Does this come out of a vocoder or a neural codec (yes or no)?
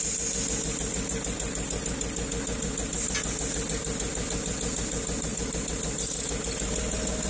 no